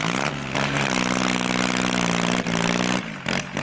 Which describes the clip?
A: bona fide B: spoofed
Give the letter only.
A